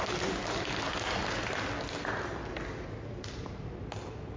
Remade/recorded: recorded